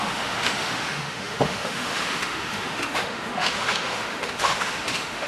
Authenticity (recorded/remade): remade